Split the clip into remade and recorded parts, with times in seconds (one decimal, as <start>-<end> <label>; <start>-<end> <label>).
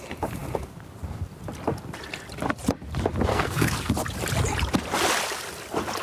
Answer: 0.0-3.3 recorded; 3.3-3.9 remade; 3.9-6.0 recorded